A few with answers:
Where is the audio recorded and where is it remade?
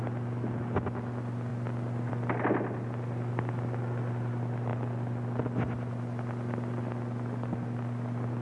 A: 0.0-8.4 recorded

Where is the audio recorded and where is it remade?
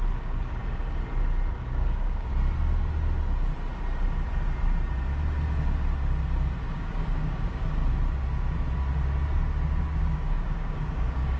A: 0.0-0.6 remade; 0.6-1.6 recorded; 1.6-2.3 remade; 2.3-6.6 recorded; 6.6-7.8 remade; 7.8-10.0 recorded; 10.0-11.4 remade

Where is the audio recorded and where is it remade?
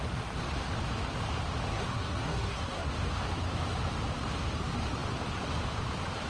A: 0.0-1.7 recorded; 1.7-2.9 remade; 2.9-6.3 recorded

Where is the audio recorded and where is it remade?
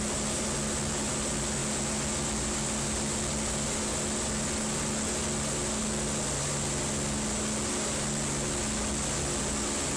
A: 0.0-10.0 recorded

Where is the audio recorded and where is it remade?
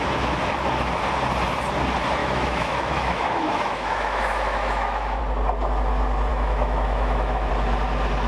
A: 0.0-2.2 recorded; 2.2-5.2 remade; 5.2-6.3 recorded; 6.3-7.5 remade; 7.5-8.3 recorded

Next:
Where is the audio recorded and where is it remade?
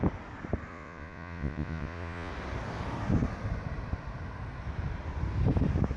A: 0.0-0.7 recorded; 0.7-2.3 remade; 2.3-6.0 recorded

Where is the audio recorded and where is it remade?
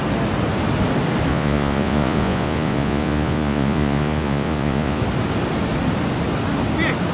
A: 0.0-1.3 recorded; 1.3-5.0 remade; 5.0-7.1 recorded